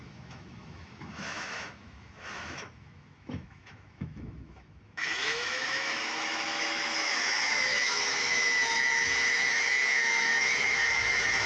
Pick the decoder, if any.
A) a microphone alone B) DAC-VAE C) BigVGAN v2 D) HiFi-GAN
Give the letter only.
B